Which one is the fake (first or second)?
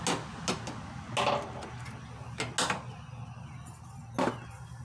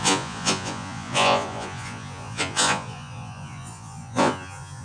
second